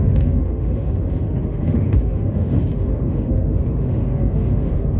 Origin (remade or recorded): remade